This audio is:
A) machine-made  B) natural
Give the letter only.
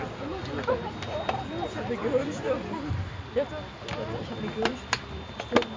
B